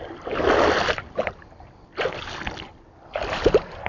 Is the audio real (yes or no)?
yes